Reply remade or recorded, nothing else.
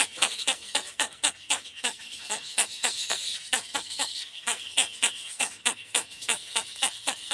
remade